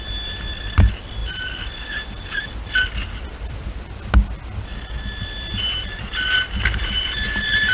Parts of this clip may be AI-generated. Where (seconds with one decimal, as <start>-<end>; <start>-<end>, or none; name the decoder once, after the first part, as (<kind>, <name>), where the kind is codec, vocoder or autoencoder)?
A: none